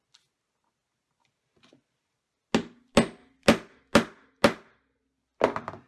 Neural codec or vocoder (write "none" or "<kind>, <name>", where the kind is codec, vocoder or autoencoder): none